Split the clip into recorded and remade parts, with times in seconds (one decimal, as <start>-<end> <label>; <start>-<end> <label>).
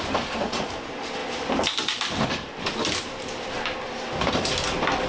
0.0-5.1 recorded